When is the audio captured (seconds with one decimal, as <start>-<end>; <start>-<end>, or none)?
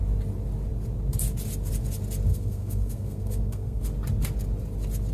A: 0.0-2.3; 3.8-5.1